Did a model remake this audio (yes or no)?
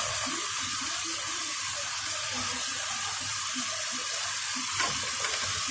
yes